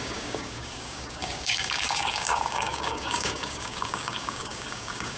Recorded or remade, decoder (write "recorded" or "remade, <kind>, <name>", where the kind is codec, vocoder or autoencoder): remade, codec, DAC